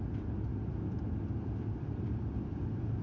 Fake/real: real